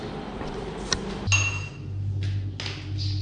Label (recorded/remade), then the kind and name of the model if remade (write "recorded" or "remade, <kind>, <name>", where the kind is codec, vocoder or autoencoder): recorded